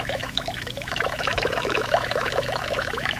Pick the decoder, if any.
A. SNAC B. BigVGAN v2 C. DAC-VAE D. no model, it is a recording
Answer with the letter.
C